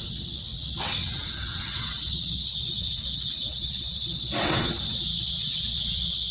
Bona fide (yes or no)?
no